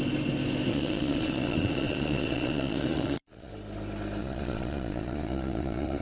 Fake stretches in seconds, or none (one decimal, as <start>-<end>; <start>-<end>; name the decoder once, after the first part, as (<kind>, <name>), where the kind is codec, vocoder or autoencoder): 0.7-3.5 (vocoder, Vocos); 4.2-6.0